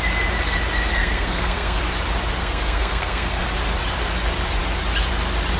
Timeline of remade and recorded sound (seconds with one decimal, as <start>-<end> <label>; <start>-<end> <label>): 0.0-0.9 recorded; 0.9-1.8 remade; 1.8-2.4 recorded; 2.4-3.4 remade; 3.4-5.6 recorded